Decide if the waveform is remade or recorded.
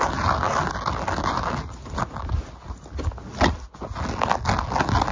recorded